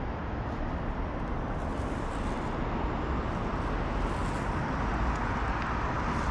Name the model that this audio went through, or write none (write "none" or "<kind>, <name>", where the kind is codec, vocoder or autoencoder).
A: none